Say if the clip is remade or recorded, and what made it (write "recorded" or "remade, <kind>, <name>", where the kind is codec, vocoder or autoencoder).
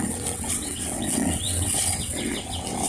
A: remade, vocoder, WaveNeXt